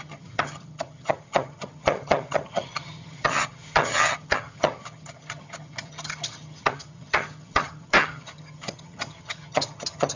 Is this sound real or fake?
fake